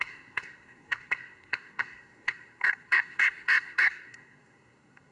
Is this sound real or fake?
fake